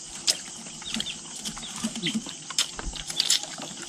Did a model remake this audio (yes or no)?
no